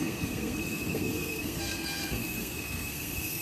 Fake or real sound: fake